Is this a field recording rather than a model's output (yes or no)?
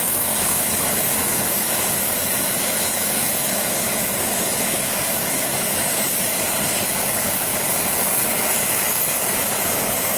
no